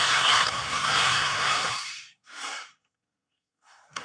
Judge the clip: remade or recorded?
remade